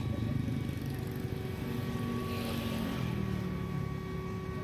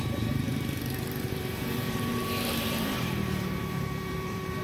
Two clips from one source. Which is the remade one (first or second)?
second